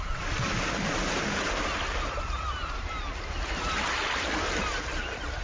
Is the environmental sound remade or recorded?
recorded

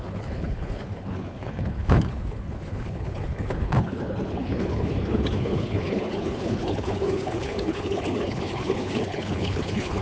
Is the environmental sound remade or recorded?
remade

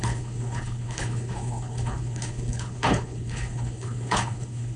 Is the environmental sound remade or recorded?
remade